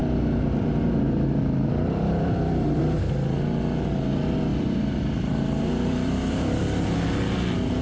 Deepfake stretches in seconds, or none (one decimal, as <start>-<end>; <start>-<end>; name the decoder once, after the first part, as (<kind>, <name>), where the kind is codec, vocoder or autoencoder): 0.0-2.8 (vocoder, BigVGAN v2); 4.5-6.6